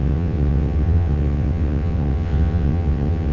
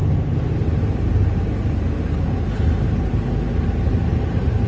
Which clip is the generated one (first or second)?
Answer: first